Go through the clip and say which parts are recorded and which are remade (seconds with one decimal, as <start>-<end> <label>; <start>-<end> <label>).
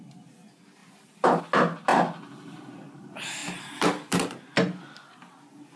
0.0-0.8 recorded; 0.8-1.4 remade; 1.4-1.9 recorded; 1.9-3.0 remade; 3.0-5.8 recorded